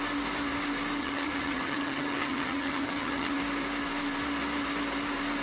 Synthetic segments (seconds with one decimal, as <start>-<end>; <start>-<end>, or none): 1.0-3.4